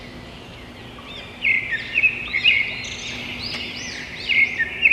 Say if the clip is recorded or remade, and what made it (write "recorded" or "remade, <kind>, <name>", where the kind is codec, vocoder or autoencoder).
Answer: recorded